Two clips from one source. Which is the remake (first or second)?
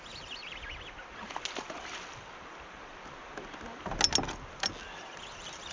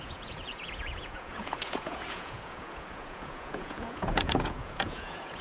second